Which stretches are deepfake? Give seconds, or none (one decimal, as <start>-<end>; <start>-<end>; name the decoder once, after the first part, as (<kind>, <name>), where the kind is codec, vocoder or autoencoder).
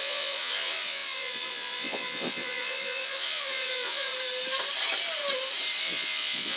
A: 0.0-4.1 (vocoder, Vocos); 5.8-6.6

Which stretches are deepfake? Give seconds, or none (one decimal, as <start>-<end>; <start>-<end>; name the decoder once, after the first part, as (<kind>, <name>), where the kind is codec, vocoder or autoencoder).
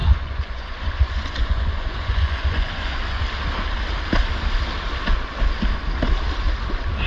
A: 0.0-3.2 (vocoder, Vocos)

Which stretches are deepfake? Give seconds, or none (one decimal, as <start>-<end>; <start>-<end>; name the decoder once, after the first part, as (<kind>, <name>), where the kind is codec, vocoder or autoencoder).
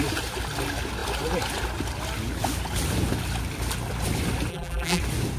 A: 4.5-5.0 (vocoder, BigVGAN v2)